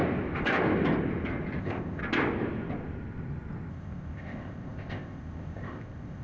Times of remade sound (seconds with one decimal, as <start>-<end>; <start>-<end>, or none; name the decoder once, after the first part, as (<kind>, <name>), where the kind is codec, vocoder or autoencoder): 1.6-2.0 (codec, ZipCodec); 3.7-6.2